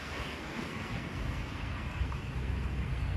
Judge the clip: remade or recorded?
remade